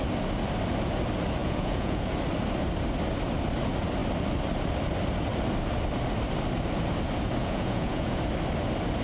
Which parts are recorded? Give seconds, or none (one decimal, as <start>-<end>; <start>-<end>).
0.0-1.4; 2.1-7.4; 8.2-9.0